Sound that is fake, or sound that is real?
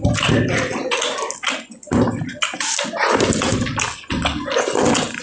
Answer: real